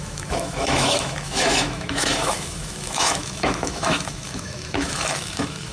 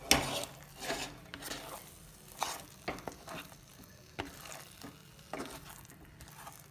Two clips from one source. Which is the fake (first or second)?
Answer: first